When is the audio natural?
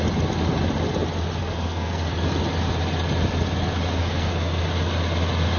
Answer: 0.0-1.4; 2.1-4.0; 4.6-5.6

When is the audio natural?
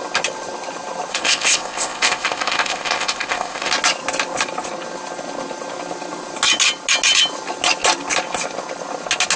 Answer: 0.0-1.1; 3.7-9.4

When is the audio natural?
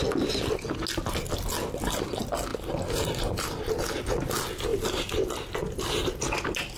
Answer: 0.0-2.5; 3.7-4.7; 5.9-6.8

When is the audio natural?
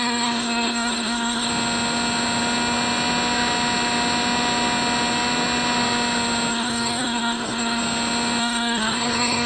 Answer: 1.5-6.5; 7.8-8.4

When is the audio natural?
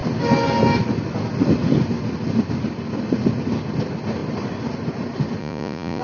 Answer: 0.0-5.4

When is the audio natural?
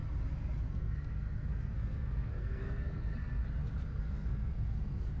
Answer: 0.0-0.7; 3.4-4.0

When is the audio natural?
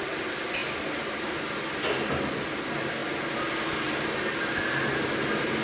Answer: 0.0-5.6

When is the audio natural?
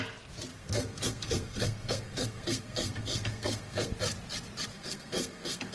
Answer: 0.0-0.5; 3.9-4.7